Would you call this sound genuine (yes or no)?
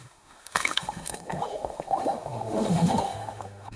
no